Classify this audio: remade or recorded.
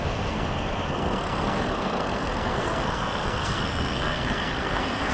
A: remade